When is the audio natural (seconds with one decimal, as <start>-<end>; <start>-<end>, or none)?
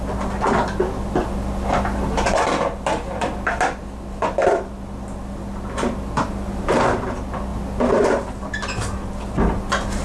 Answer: 0.0-10.0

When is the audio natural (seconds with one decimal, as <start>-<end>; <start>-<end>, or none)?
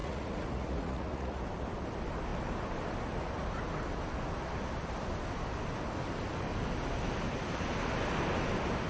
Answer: 1.4-8.9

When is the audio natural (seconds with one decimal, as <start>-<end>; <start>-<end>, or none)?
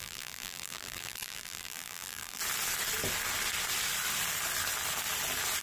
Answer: 2.4-5.6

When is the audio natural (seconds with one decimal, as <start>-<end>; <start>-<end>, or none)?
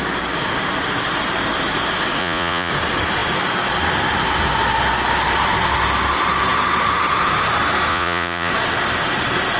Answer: 0.0-2.2; 2.7-7.9; 8.5-9.6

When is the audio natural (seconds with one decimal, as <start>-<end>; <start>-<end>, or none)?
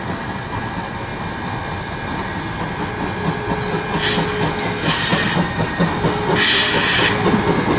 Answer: 0.0-7.8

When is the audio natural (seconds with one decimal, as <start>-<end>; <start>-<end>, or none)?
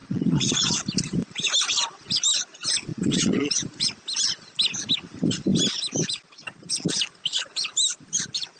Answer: 0.7-2.9; 3.5-8.6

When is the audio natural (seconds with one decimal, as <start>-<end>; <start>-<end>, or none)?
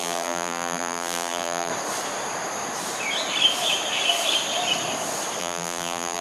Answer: 1.7-5.4